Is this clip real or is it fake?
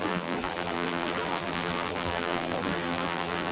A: fake